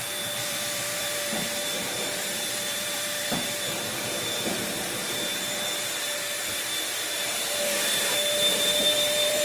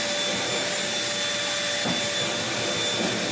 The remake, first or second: first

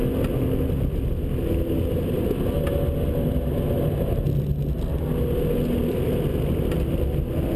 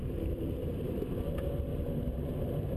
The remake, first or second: second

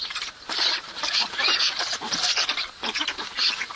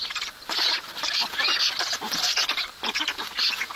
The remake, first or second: first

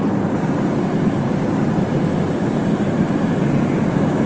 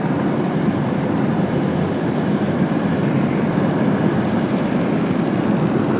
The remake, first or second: second